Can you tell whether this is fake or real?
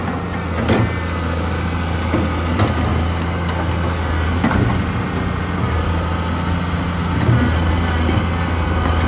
real